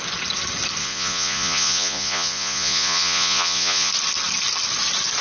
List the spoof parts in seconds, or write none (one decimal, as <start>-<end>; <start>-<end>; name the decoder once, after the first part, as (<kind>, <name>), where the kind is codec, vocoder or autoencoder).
0.8-3.9 (vocoder, Vocos)